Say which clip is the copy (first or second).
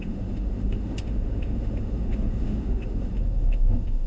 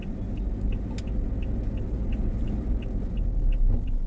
first